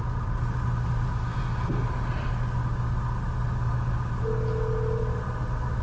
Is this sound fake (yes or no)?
no